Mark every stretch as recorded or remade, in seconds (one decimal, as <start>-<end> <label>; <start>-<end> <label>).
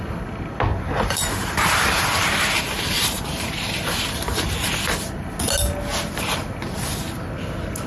0.0-0.7 recorded; 0.7-4.7 remade; 4.7-7.9 recorded